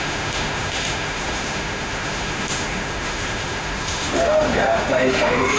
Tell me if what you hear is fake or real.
fake